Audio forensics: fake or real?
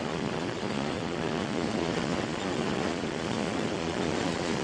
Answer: fake